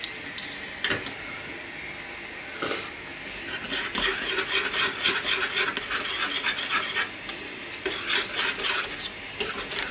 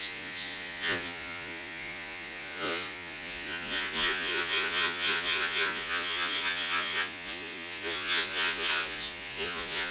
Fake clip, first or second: second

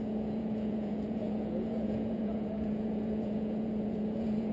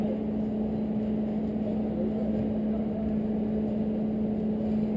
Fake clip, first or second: first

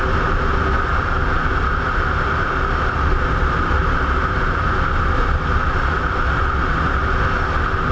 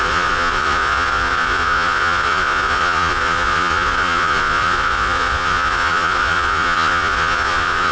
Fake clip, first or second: second